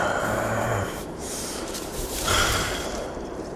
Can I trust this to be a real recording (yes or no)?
no